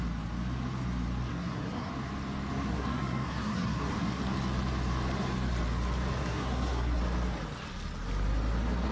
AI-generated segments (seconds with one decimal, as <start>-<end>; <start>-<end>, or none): 1.3-1.9; 2.7-4.2; 6.2-7.0